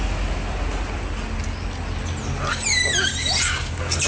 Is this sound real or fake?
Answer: real